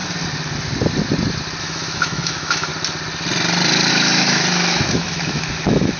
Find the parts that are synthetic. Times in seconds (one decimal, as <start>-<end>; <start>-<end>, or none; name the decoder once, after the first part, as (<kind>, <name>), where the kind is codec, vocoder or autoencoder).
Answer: 1.6-2.7 (autoencoder, DAC-VAE); 3.9-6.0

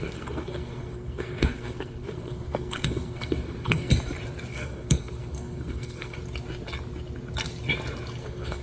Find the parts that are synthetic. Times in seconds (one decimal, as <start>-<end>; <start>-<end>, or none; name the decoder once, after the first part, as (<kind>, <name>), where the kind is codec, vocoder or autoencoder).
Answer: 0.0-3.9 (codec, SNAC); 4.5-6.2; 8.2-8.6

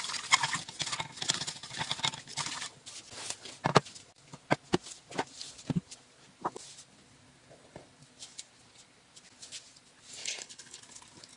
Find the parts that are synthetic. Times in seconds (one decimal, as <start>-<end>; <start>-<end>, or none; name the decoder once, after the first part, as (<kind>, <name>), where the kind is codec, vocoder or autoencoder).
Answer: 10.2-10.8 (codec, HILCodec)

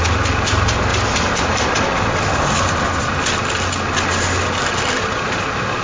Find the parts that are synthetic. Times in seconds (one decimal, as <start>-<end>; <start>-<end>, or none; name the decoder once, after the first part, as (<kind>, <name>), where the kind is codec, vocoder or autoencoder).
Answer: none